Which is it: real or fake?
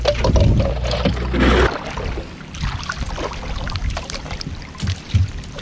real